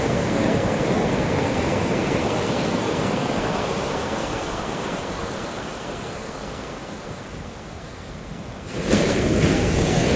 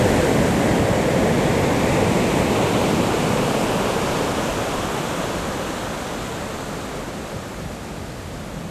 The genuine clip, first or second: second